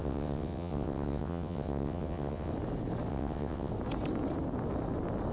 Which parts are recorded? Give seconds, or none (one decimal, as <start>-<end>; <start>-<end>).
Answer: 2.5-3.1; 3.7-5.3